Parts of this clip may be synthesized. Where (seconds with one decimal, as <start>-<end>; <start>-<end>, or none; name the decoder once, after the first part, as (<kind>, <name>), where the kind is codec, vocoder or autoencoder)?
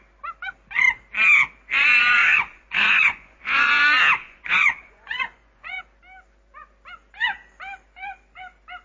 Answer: 2.2-3.7 (vocoder, Vocos); 4.2-5.8